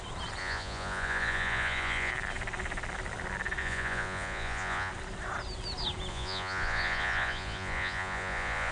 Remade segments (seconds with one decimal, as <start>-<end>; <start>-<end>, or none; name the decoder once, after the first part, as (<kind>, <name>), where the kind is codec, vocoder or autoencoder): 0.4-2.1 (vocoder, Vocos); 3.6-4.9; 6.1-8.7

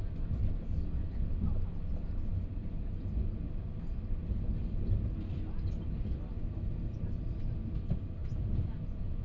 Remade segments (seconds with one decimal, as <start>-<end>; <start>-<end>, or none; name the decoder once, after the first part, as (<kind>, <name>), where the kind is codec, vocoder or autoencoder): 8.2-9.2 (vocoder, Vocos)